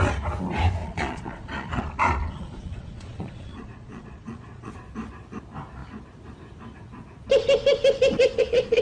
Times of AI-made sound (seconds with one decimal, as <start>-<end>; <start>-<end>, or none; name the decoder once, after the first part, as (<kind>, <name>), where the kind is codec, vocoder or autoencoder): 0.8-4.7 (vocoder, Vocos)